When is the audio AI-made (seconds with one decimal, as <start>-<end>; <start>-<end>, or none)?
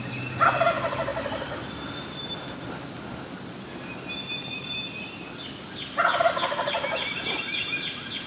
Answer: none